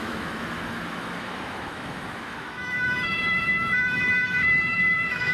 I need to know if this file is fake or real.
fake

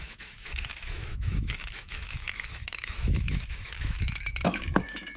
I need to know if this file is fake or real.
fake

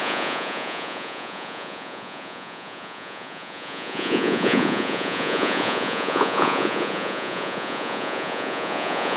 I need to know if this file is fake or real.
fake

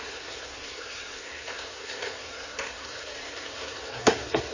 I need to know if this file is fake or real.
fake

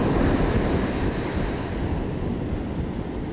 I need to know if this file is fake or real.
real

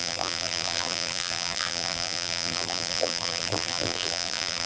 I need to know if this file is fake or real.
fake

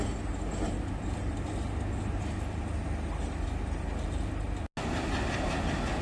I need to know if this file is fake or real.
real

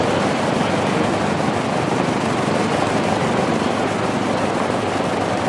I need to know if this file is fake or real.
real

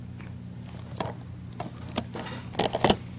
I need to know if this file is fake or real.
real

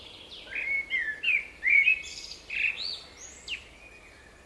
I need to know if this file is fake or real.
real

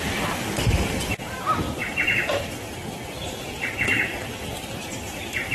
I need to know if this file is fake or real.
real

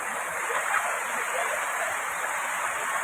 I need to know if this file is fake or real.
fake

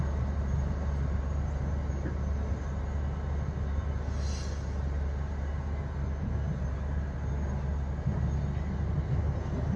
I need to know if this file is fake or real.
real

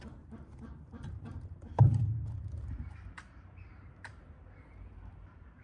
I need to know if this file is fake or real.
fake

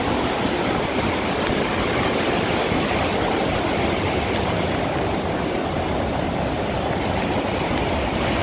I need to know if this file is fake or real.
real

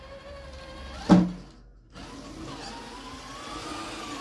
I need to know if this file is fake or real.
real